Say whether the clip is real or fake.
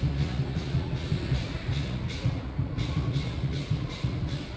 fake